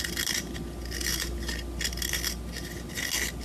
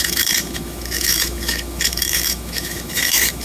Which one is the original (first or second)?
first